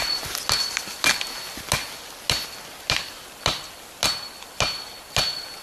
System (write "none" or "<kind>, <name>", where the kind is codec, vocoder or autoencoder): none